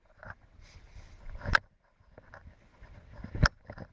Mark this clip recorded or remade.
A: recorded